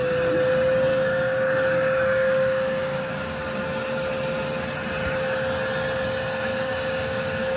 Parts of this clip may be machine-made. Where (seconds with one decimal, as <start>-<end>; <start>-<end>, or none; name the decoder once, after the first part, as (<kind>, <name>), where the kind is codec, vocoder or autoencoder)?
0.9-3.4 (codec, DAC); 6.5-7.6